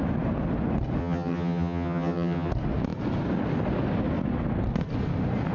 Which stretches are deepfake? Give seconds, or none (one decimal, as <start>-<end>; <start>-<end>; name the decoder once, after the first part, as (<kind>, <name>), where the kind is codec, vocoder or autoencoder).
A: 1.0-2.5 (vocoder, HiFi-GAN)